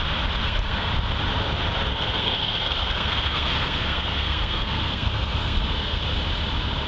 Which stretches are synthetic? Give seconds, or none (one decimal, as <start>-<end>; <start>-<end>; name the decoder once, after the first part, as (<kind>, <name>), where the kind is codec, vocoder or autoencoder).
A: 0.4-0.9 (codec, SNAC); 1.9-6.0